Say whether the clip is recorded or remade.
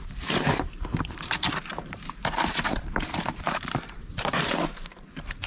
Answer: remade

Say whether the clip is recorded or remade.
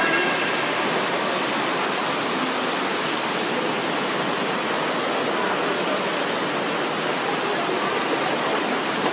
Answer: recorded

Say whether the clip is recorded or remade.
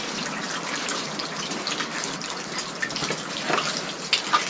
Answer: recorded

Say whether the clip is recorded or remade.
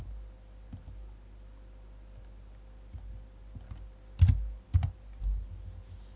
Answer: recorded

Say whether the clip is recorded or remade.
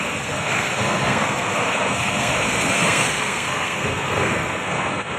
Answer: remade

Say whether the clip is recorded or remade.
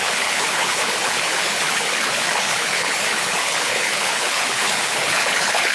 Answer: remade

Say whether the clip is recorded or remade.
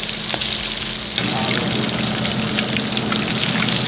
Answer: recorded